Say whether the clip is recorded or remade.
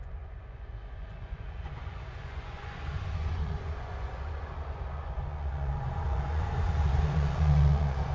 remade